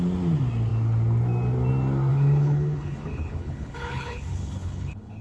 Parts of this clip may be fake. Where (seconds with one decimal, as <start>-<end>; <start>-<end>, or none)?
2.1-5.2